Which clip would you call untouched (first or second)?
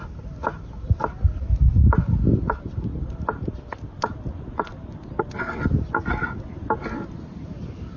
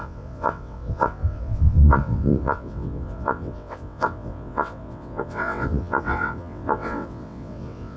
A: first